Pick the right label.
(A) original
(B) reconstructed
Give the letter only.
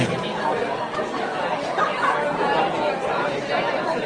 A